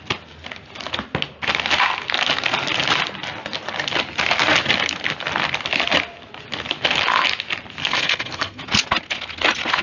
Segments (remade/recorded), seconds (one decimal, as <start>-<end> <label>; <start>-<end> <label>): 0.0-7.8 recorded; 7.8-8.6 remade; 8.6-9.8 recorded